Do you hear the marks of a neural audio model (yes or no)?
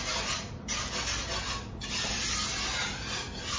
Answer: no